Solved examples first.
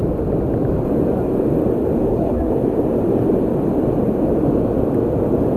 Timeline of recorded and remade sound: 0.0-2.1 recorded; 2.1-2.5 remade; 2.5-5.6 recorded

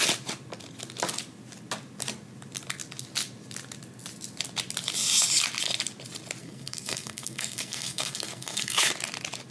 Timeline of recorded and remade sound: 0.0-6.4 recorded; 6.4-8.9 remade; 8.9-9.5 recorded

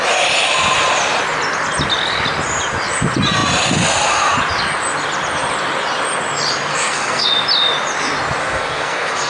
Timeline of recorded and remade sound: 0.0-6.7 recorded; 6.7-7.3 remade; 7.3-8.4 recorded; 8.4-9.3 remade

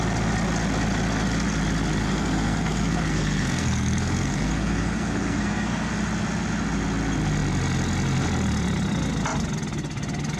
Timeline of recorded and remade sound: 0.0-2.0 recorded; 2.0-5.9 remade; 5.9-10.4 recorded

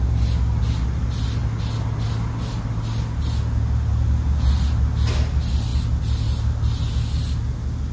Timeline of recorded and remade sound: 0.0-7.9 recorded